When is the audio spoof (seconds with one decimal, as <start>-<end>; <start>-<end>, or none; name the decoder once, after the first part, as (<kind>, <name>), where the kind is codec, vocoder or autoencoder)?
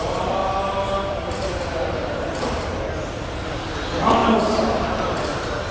0.4-2.4 (vocoder, BigVGAN v2); 4.2-5.2